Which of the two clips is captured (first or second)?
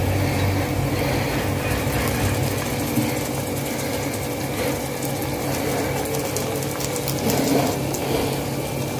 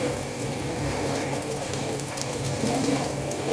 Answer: first